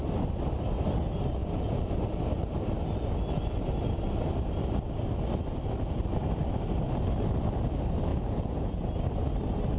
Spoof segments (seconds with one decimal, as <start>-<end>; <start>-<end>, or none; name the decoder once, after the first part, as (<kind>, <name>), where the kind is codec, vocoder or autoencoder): 1.4-2.0 (vocoder, Vocos); 8.1-8.8